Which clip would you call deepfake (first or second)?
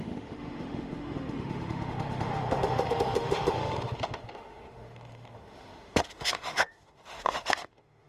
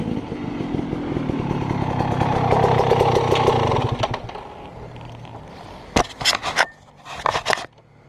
first